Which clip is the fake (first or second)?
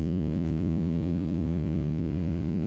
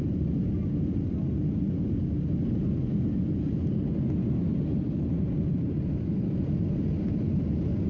first